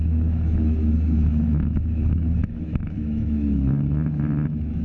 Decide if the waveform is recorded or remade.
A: remade